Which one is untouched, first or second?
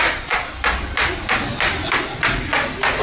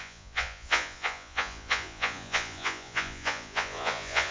first